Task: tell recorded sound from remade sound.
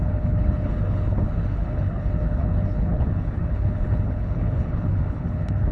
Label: remade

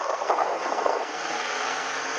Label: remade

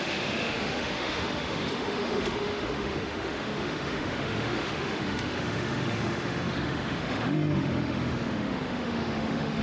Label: remade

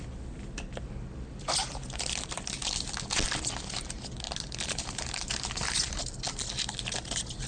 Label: recorded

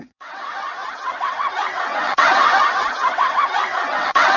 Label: remade